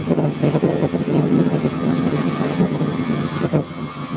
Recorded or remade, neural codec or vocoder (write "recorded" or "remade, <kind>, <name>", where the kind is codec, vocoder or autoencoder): remade, vocoder, HiFi-GAN